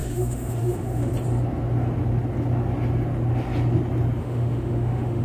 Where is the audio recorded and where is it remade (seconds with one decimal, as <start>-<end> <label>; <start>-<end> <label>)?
0.0-1.1 remade; 1.1-4.2 recorded; 4.2-5.2 remade